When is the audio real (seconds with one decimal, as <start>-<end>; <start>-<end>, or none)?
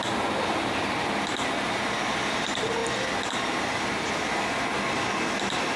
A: 0.0-1.0; 2.1-2.8; 4.1-5.8